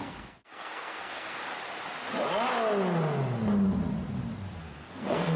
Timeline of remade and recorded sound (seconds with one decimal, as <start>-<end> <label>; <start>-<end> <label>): 0.0-1.4 remade; 1.4-4.6 recorded; 4.6-5.4 remade